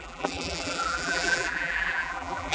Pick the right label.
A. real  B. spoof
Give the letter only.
B